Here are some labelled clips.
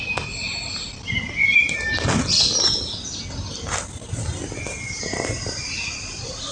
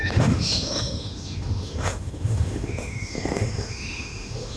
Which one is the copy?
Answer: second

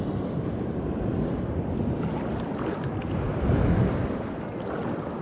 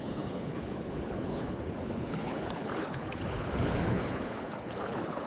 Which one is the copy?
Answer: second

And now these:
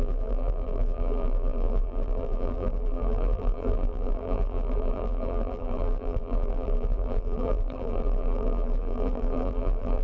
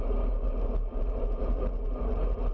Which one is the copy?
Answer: first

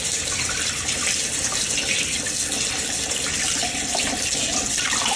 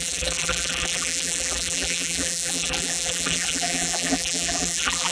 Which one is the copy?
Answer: second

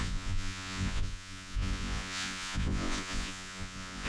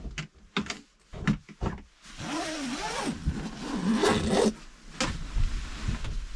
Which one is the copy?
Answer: first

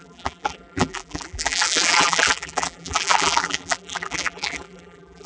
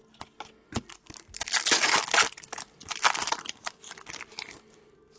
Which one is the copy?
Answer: first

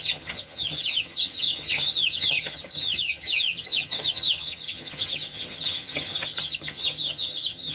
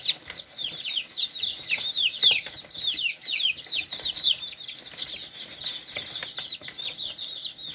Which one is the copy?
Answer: first